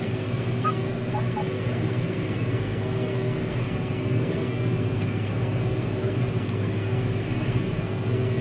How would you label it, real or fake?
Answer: fake